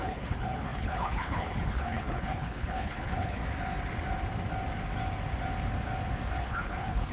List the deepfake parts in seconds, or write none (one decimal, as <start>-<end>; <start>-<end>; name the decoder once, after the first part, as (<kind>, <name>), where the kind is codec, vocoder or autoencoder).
0.0-3.4 (codec, HILCodec); 6.4-7.1